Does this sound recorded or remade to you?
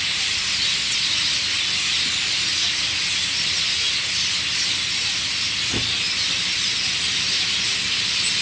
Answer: recorded